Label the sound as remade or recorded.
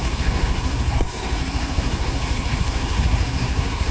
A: remade